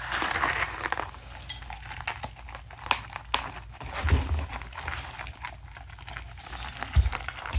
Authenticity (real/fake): real